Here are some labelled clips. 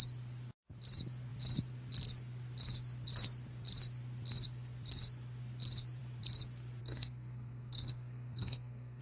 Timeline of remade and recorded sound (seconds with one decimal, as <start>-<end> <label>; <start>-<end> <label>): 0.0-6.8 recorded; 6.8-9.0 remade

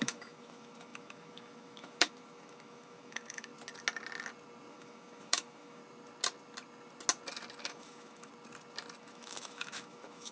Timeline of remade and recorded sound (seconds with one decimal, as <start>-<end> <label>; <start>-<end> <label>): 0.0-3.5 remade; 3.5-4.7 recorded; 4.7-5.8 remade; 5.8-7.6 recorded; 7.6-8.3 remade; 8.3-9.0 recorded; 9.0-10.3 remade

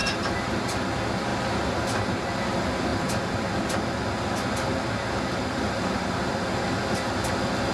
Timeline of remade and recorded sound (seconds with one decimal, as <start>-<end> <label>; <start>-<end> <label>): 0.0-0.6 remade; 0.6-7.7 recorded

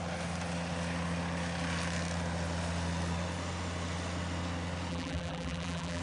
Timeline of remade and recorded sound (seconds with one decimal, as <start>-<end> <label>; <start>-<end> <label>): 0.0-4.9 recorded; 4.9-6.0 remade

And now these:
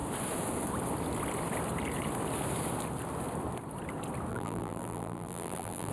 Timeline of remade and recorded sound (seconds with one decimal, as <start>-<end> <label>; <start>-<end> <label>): 0.0-4.3 recorded; 4.3-5.9 remade

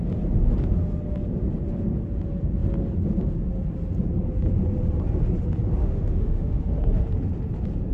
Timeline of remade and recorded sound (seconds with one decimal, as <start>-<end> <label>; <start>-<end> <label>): 0.0-5.8 recorded; 5.8-6.6 remade; 6.6-7.9 recorded

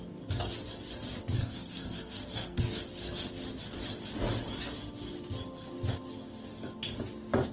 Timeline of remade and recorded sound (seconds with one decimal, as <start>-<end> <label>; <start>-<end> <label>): 0.0-1.4 recorded; 1.4-2.6 remade; 2.6-7.5 recorded